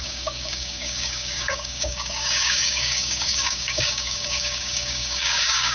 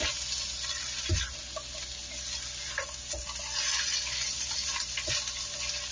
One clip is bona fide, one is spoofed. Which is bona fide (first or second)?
second